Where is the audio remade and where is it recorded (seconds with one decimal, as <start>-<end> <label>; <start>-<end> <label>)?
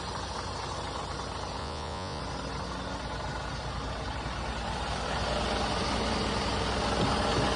0.0-1.6 recorded; 1.6-2.2 remade; 2.2-7.6 recorded